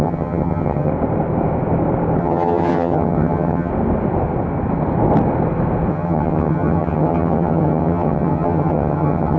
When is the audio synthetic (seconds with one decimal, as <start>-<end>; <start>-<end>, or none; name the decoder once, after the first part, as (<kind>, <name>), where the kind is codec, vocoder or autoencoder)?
0.0-0.9 (vocoder, HiFi-GAN); 2.2-3.7; 5.9-9.4